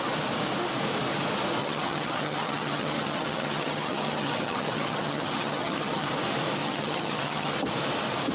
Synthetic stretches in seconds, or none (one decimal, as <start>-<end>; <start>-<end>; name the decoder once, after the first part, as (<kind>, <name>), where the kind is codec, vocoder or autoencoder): 1.6-6.1 (vocoder, HiFi-GAN); 6.6-7.5

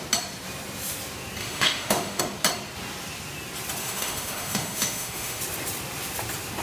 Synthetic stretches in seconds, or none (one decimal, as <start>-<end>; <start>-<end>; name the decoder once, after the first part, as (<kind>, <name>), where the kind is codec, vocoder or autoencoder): 1.4-2.2 (autoencoder, DAC-VAE); 3.8-5.4

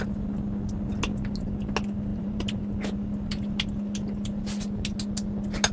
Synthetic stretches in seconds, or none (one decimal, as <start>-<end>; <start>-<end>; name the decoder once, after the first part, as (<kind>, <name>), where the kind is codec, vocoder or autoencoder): 2.1-2.6 (vocoder, BigVGAN v2)

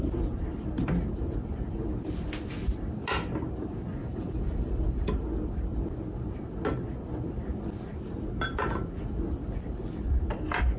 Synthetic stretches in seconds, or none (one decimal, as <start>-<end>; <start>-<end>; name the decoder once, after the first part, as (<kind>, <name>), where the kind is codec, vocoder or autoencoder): 4.0-5.1 (vocoder, BigVGAN v2)

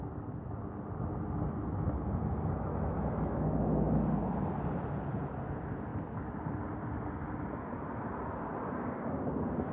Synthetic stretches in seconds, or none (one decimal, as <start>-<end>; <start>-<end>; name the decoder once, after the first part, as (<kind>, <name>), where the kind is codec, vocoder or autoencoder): 2.7-3.9 (autoencoder, DAC-VAE)

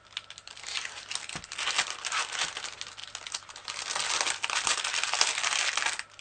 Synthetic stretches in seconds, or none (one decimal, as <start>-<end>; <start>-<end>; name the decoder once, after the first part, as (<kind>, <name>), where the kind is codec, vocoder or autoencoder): none

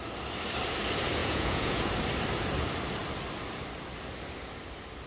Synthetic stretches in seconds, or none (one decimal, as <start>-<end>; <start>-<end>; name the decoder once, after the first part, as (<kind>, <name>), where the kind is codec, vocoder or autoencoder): 1.2-1.9 (vocoder, Vocos)